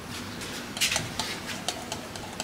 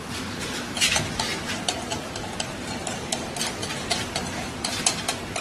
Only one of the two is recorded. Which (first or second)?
first